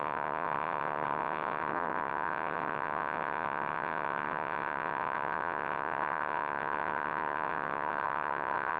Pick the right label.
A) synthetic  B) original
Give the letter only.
A